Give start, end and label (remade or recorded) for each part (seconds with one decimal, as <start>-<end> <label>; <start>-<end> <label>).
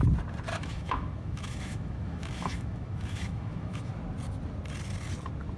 0.0-0.5 recorded; 0.5-3.9 remade; 3.9-5.6 recorded